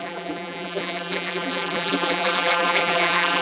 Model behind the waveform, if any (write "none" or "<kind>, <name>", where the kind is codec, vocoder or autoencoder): vocoder, BigVGAN v2